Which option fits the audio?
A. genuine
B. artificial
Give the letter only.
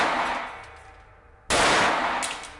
A